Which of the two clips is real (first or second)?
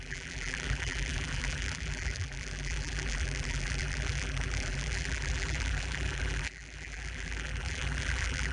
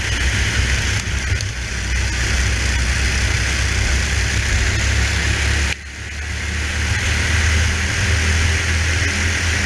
second